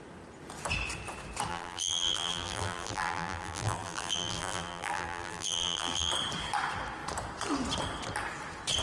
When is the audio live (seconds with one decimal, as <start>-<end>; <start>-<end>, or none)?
0.0-1.5; 6.1-8.8